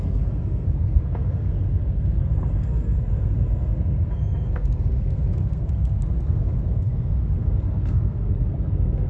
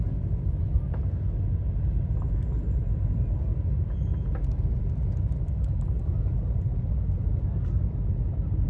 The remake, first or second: first